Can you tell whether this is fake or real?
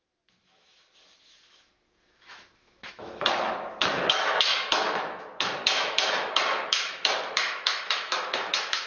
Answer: fake